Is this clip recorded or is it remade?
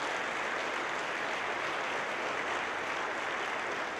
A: recorded